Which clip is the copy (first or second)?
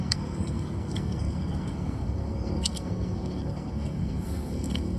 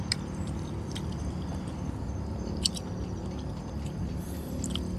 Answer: first